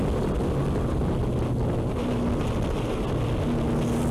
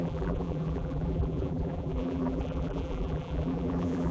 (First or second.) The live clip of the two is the first